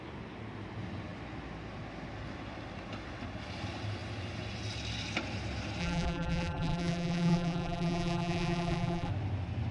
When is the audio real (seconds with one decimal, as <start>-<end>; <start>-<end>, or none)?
0.0-5.8; 9.1-9.7